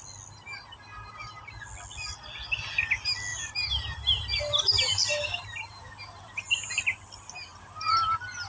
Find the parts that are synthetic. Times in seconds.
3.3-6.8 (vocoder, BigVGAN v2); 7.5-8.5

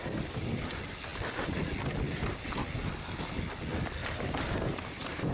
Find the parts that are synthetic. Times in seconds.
4.0-5.3 (vocoder, BigVGAN v2)

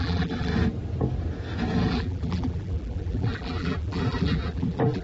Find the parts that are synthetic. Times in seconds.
0.0-0.5 (vocoder, BigVGAN v2); 1.9-5.0